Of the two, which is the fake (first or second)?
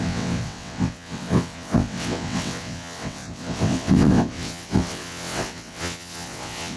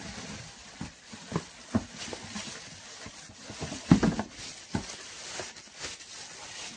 first